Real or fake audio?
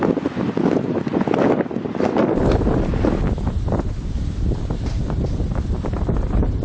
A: real